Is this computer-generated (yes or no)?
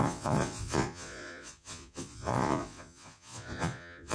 yes